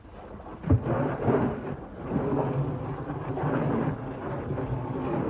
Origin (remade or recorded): recorded